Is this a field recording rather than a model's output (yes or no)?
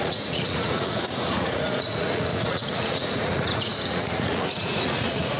no